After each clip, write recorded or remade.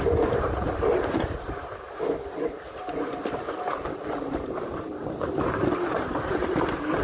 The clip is remade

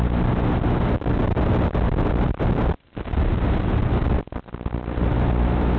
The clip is recorded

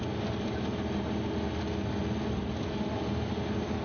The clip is recorded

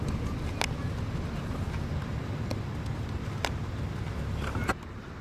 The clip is recorded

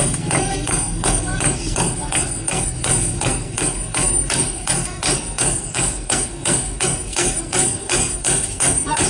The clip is remade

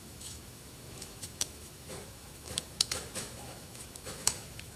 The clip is remade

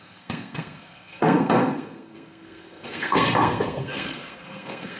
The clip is remade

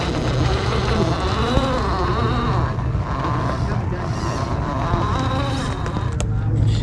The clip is recorded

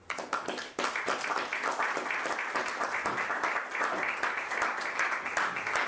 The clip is recorded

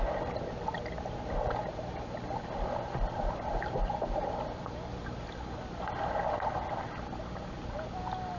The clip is recorded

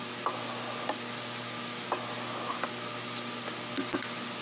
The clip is recorded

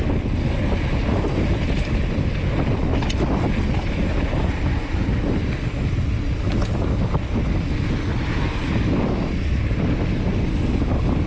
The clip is recorded